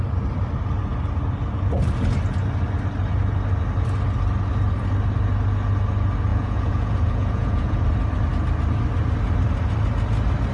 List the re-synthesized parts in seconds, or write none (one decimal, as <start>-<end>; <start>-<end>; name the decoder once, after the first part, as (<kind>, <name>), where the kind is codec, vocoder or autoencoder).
6.3-7.8 (vocoder, Vocos)